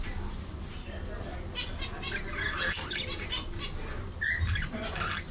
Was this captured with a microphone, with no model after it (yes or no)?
yes